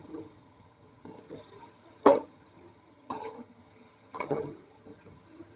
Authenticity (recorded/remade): remade